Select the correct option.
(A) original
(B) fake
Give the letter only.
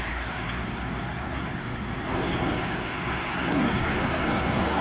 B